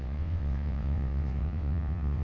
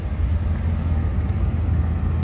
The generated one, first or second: first